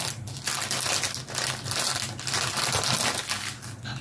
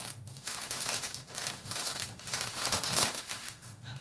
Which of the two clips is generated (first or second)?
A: second